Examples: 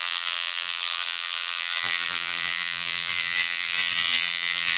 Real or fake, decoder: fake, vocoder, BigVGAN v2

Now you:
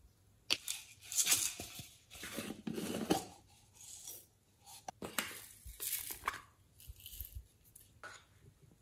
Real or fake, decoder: real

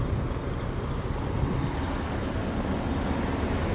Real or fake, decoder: real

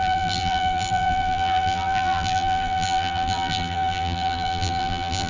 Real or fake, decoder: fake, vocoder, BigVGAN v2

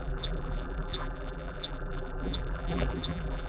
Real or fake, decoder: fake, vocoder, BigVGAN v2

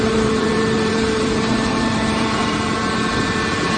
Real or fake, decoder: fake, vocoder, BigVGAN v2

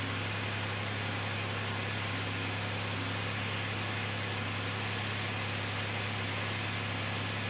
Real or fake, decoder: real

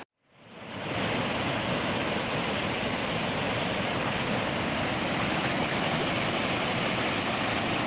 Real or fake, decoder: real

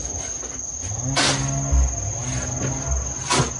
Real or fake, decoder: real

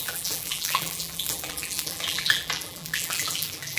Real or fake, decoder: fake, vocoder, BigVGAN v2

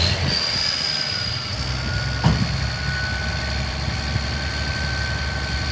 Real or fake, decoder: real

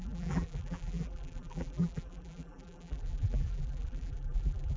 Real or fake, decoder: fake, vocoder, BigVGAN v2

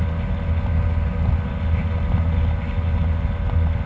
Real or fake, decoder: real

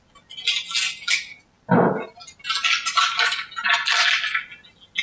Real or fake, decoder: real